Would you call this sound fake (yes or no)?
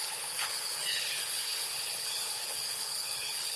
yes